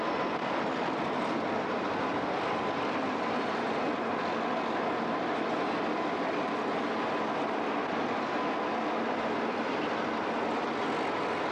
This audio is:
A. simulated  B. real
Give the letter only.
B